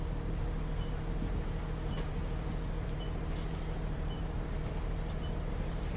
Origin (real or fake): fake